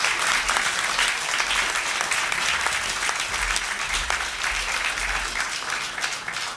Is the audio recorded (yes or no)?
yes